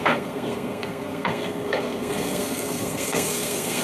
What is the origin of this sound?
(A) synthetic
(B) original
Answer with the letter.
A